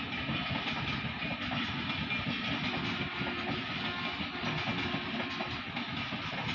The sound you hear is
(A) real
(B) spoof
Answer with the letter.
A